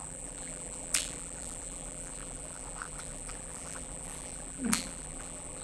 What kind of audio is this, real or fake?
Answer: fake